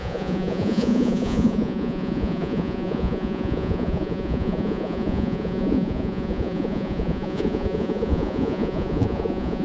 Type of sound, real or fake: fake